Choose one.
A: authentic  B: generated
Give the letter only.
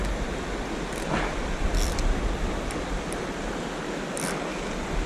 A